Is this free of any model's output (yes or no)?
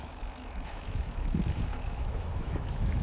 no